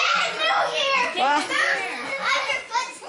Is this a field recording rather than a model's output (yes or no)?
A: no